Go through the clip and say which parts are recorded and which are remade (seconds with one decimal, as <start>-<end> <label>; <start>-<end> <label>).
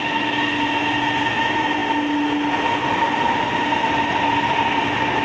0.0-5.2 recorded